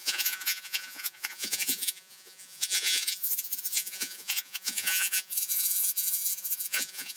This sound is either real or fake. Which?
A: fake